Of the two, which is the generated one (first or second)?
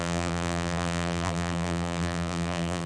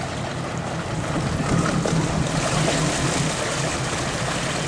first